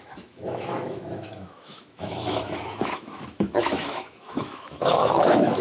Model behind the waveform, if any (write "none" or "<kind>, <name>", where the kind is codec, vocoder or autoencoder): autoencoder, DAC-VAE